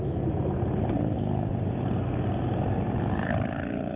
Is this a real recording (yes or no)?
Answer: yes